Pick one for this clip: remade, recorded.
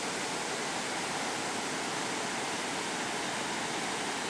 recorded